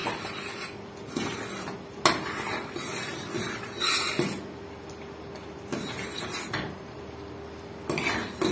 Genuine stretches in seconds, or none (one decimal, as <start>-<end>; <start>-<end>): 0.0-5.7; 7.0-8.5